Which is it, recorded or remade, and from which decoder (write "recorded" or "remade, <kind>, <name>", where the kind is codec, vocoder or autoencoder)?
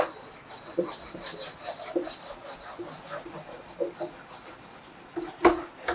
recorded